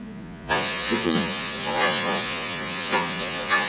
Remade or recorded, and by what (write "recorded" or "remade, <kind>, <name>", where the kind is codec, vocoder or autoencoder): remade, vocoder, Vocos